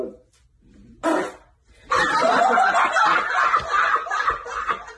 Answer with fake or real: real